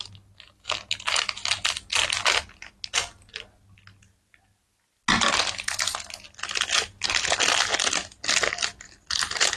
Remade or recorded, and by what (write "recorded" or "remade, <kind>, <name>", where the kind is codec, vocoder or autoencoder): recorded